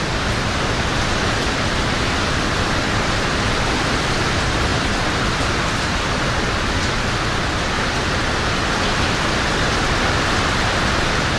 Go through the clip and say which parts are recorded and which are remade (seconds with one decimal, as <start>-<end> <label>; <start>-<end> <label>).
0.0-11.4 recorded